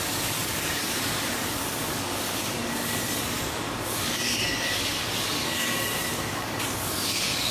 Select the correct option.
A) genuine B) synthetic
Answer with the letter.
B